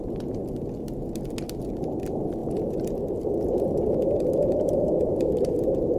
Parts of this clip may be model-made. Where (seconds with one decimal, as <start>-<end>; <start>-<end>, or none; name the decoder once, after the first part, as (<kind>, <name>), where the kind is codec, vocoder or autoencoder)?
2.4-6.0 (vocoder, BigVGAN v2)

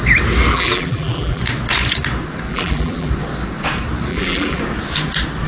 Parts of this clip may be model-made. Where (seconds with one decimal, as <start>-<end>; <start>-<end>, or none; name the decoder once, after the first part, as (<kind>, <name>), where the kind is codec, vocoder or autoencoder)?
0.5-1.4 (vocoder, BigVGAN v2); 2.5-3.1; 4.1-4.6